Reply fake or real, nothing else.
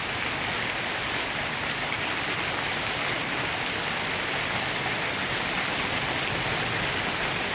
real